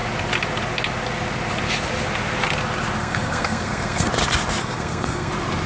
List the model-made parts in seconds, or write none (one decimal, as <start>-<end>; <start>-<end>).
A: 3.0-4.1; 4.6-5.3